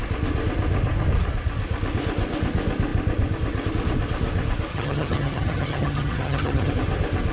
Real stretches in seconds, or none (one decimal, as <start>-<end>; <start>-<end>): 0.0-4.7; 6.7-7.3